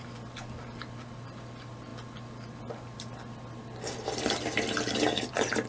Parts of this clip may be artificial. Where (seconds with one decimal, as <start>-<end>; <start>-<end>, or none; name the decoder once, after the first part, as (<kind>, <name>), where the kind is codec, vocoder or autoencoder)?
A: none